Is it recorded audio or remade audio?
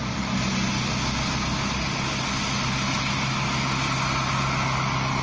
recorded